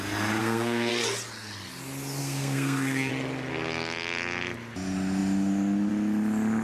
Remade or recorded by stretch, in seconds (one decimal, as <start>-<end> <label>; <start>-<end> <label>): 0.0-0.4 recorded; 0.4-0.9 remade; 0.9-2.2 recorded; 2.2-3.1 remade; 3.1-6.6 recorded

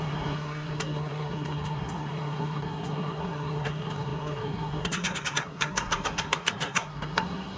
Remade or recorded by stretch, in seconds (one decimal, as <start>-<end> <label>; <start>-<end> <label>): 0.0-7.6 remade

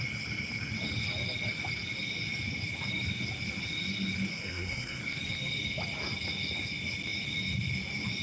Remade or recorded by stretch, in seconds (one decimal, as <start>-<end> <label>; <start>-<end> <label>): 0.0-4.3 recorded; 4.3-5.0 remade; 5.0-8.2 recorded

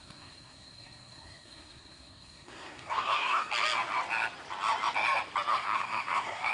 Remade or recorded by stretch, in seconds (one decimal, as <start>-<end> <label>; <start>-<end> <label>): 0.0-3.5 remade; 3.5-5.5 recorded; 5.5-6.5 remade

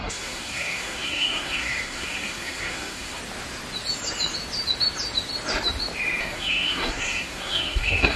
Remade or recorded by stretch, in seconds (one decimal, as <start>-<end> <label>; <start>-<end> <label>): 0.0-3.2 remade; 3.2-6.2 recorded; 6.2-8.2 remade

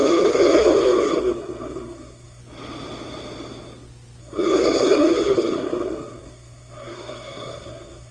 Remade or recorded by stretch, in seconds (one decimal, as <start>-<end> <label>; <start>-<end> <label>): 0.0-2.4 remade; 2.4-4.2 recorded; 4.2-8.1 remade

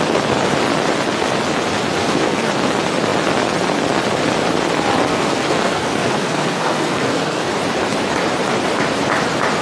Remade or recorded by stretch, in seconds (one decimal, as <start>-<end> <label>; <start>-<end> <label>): 0.0-2.0 recorded; 2.0-2.5 remade; 2.5-5.1 recorded; 5.1-7.5 remade; 7.5-9.6 recorded

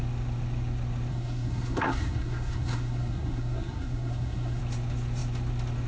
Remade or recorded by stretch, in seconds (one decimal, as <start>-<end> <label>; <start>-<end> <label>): 0.0-1.1 recorded; 1.1-4.6 remade; 4.6-5.9 recorded